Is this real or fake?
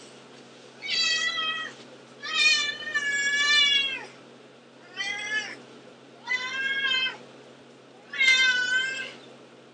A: real